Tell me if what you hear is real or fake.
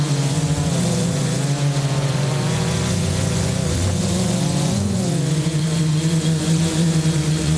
fake